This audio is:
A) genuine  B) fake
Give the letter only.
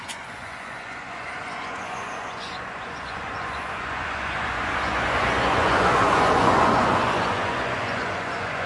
B